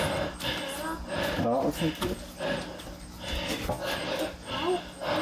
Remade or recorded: recorded